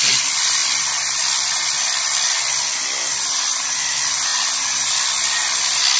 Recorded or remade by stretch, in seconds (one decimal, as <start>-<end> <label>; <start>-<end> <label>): 0.0-6.0 recorded